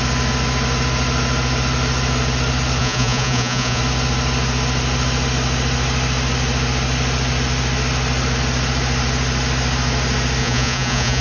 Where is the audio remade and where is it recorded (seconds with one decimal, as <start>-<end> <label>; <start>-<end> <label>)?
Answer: 0.0-2.8 recorded; 2.8-3.8 remade; 3.8-10.4 recorded; 10.4-11.2 remade